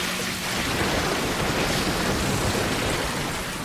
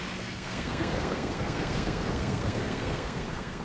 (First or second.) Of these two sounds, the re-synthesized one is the second